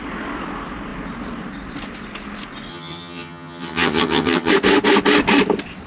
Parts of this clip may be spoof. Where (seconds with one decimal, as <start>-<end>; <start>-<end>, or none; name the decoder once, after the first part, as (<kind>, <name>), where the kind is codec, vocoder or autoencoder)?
2.7-4.5 (vocoder, HiFi-GAN)

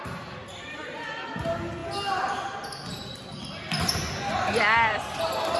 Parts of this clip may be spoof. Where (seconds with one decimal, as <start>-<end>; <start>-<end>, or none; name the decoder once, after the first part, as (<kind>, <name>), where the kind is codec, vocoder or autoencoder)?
none

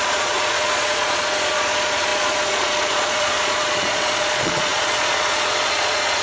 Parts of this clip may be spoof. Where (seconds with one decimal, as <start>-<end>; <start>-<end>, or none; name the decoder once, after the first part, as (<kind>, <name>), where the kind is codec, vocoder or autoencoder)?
0.0-6.2 (vocoder, Vocos)

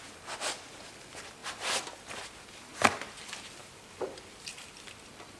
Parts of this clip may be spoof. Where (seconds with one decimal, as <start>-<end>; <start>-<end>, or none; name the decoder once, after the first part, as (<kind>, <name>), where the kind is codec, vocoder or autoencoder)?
1.4-2.3 (vocoder, BigVGAN v2)

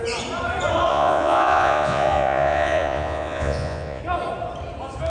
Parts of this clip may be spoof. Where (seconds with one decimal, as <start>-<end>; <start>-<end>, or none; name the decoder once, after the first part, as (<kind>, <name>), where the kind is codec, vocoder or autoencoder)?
0.9-4.0 (vocoder, Vocos)

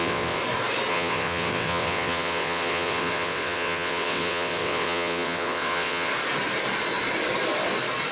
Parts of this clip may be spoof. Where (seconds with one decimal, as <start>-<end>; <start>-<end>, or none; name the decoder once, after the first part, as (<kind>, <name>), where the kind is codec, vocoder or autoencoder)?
0.0-0.4 (vocoder, WaveNeXt); 0.9-6.1